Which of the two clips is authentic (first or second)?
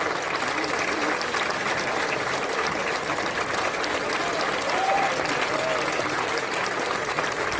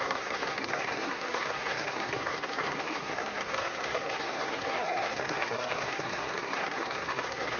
first